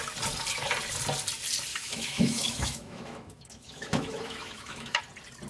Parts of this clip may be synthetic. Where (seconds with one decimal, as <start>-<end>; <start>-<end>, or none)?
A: 1.7-5.0